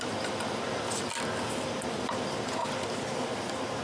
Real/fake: real